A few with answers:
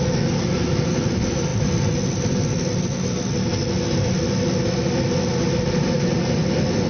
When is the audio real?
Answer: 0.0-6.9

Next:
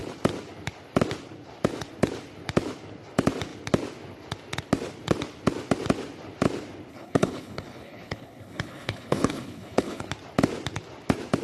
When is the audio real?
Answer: 0.0-6.9; 10.1-11.4

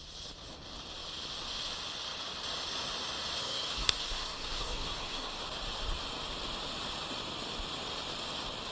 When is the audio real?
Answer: 0.0-3.4; 5.4-8.7